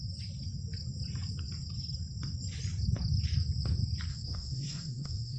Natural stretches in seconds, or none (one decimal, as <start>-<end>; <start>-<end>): 0.0-4.1